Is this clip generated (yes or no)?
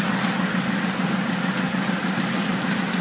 no